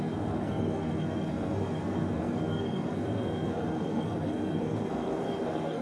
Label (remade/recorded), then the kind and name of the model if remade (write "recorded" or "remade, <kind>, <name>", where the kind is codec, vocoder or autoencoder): remade, codec, SNAC